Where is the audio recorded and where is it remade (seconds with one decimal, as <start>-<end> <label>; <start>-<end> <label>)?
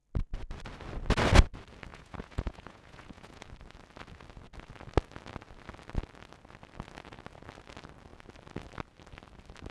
0.0-1.9 recorded; 1.9-3.4 remade; 3.4-9.7 recorded